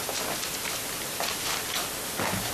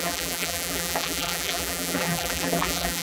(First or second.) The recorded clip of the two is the first